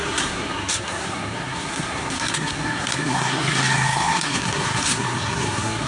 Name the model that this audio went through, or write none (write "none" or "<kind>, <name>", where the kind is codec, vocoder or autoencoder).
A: codec, SNAC